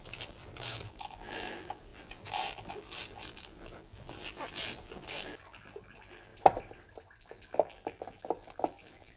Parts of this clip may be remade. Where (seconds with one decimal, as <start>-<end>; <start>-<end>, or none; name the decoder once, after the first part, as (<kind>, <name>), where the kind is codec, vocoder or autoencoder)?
0.0-6.3 (vocoder, BigVGAN v2); 7.2-9.2

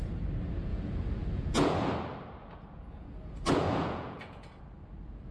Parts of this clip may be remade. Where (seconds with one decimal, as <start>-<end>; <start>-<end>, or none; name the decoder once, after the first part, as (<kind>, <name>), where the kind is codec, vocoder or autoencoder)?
0.7-1.9 (vocoder, Vocos); 2.4-4.6

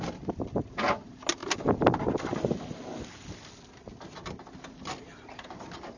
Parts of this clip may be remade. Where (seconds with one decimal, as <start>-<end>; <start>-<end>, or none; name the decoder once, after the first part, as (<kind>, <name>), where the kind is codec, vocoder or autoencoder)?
none

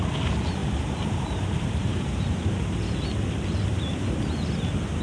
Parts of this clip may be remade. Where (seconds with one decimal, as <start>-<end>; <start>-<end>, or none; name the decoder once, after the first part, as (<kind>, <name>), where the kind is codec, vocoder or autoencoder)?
0.6-2.8 (vocoder, BigVGAN v2); 3.7-4.5

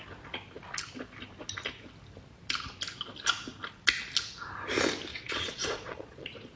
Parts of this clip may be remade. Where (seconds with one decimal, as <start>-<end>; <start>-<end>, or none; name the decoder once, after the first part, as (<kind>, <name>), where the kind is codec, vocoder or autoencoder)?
5.1-6.6 (vocoder, Vocos)